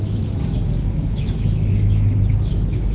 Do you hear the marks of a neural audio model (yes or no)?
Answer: yes